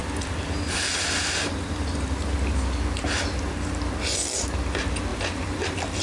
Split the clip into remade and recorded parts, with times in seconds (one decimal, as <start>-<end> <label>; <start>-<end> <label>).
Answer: 0.0-3.5 remade; 3.5-5.1 recorded; 5.1-6.0 remade